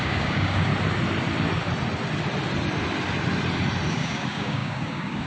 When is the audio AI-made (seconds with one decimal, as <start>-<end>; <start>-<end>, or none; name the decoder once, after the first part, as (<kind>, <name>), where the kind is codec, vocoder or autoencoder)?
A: 0.0-0.7 (codec, DAC); 3.9-5.3